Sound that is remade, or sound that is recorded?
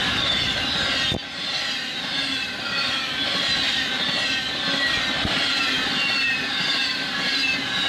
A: recorded